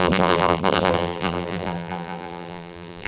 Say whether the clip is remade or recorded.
remade